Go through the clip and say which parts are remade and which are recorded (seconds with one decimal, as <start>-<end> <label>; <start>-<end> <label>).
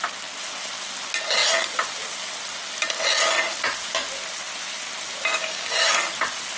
0.0-5.4 recorded; 5.4-5.9 remade; 5.9-6.6 recorded